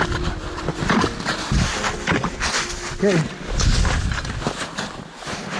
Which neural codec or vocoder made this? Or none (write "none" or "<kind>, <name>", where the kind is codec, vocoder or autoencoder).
none